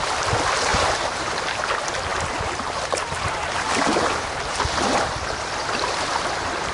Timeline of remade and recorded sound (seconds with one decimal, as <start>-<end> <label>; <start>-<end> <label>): 0.0-0.7 recorded; 0.7-1.6 remade; 1.6-6.7 recorded